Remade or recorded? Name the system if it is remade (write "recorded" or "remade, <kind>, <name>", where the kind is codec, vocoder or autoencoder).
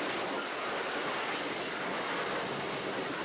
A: recorded